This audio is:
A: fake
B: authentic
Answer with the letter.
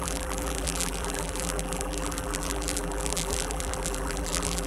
A